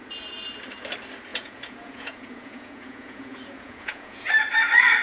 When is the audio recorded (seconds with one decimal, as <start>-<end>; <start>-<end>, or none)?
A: 0.0-1.3; 4.3-5.0